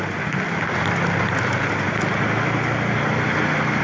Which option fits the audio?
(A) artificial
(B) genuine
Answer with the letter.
B